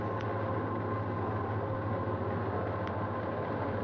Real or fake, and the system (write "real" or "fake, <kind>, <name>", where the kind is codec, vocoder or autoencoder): real